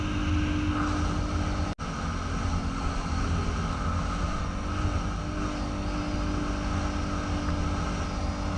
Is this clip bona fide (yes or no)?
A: yes